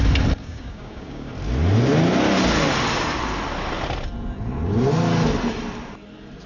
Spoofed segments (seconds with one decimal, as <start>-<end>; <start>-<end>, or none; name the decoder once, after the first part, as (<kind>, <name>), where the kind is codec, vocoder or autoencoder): 0.4-1.3 (codec, DAC)